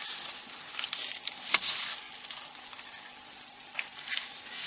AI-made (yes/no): no